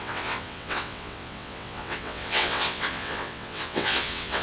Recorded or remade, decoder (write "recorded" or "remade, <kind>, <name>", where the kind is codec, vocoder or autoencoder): remade, vocoder, WaveNeXt